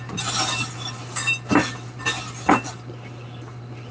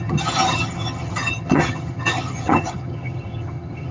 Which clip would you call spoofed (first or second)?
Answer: second